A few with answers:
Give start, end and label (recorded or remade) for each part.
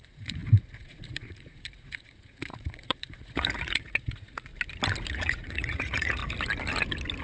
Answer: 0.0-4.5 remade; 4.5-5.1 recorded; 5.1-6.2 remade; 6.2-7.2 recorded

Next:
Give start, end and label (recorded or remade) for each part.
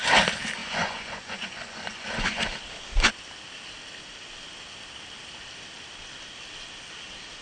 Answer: 0.0-0.6 recorded; 0.6-2.4 remade; 2.4-7.4 recorded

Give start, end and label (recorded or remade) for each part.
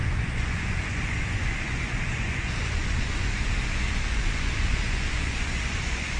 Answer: 0.0-6.2 remade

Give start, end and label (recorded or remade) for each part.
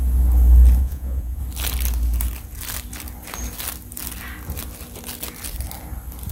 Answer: 0.0-0.8 recorded; 0.8-1.4 remade; 1.4-6.3 recorded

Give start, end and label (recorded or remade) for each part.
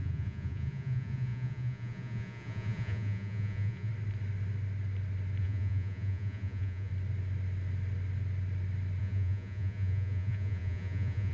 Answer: 0.0-3.9 remade; 3.9-5.4 recorded; 5.4-6.9 remade; 6.9-9.0 recorded; 9.0-11.3 remade